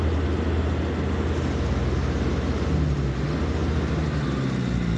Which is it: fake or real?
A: real